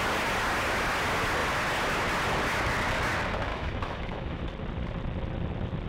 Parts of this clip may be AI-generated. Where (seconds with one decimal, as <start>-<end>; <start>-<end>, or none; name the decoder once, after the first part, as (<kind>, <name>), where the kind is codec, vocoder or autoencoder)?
3.5-4.4 (autoencoder, DAC-VAE)